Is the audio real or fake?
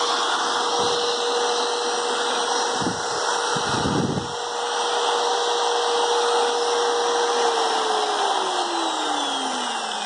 real